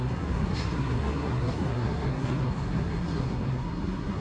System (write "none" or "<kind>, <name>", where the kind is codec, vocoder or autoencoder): codec, SNAC